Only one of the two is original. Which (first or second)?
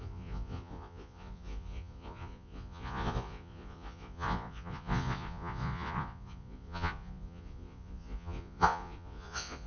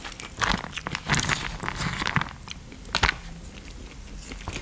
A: second